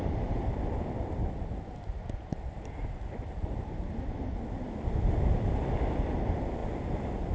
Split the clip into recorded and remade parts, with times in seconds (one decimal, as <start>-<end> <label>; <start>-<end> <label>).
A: 0.0-7.3 recorded